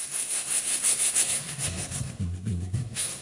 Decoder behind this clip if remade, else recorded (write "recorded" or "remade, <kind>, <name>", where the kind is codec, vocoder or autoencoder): remade, codec, SNAC